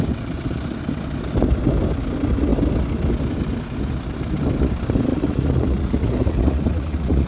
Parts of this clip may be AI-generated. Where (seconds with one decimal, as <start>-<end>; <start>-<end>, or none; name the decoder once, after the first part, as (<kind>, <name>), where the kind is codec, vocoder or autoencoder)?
5.1-7.3 (vocoder, Vocos)